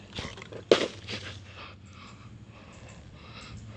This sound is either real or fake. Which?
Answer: real